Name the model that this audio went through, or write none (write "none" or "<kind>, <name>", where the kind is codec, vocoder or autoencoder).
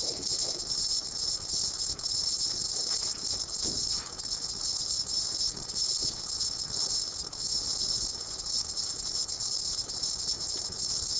none